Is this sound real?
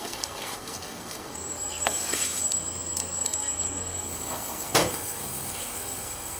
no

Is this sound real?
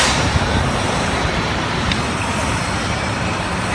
no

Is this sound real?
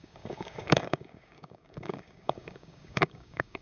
no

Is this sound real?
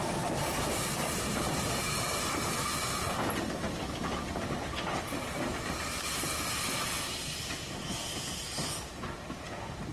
yes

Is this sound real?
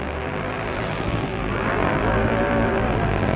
no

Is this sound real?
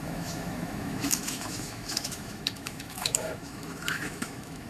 no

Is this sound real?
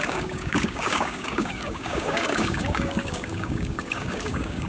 no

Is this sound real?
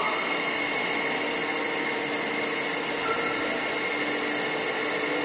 yes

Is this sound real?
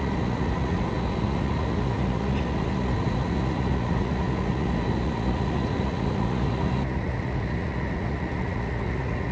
no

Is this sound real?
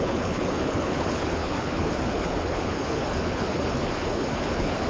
no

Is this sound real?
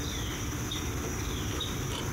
yes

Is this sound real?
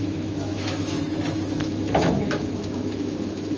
no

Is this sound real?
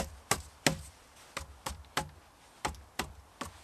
yes